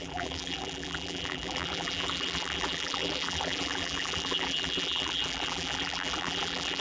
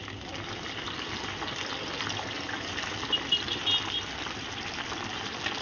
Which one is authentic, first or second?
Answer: second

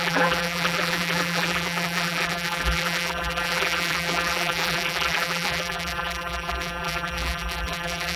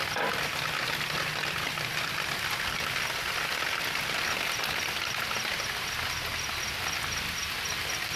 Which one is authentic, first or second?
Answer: second